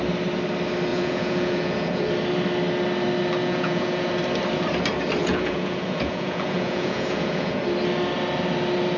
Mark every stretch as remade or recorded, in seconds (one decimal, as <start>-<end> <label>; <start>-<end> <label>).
0.0-0.9 recorded; 0.9-2.1 remade; 2.1-3.4 recorded; 3.4-4.1 remade; 4.1-5.2 recorded; 5.2-7.6 remade; 7.6-9.0 recorded

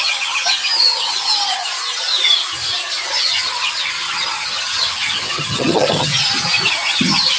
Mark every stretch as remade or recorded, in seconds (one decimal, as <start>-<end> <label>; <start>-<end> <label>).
0.0-1.6 remade; 1.6-3.1 recorded; 3.1-6.1 remade; 6.1-6.7 recorded; 6.7-7.4 remade